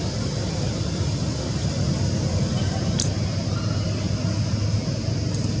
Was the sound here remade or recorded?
recorded